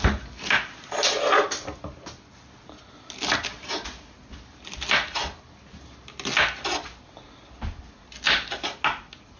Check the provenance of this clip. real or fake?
real